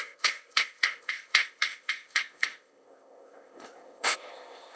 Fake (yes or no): yes